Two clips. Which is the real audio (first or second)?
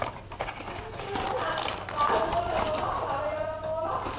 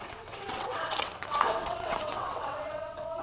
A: first